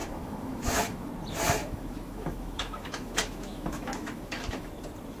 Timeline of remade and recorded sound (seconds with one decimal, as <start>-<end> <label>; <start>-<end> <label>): 0.0-1.1 remade; 1.1-1.6 recorded; 1.6-4.7 remade; 4.7-5.2 recorded